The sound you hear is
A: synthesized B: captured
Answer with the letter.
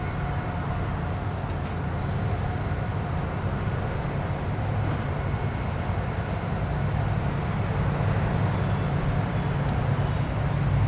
B